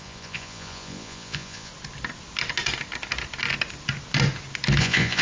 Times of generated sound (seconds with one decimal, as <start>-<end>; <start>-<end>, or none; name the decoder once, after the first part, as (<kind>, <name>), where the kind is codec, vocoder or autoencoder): 0.0-1.7 (vocoder, Vocos); 4.8-5.2